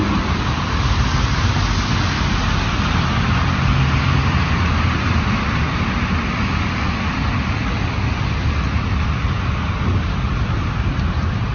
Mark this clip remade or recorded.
recorded